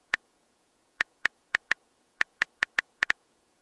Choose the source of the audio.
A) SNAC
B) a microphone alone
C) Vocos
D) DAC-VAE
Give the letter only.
C